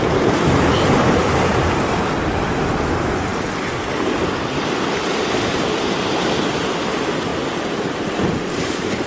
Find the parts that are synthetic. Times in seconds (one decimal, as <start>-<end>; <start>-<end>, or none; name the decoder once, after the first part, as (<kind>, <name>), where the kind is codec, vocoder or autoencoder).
none